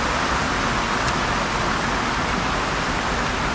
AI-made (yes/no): no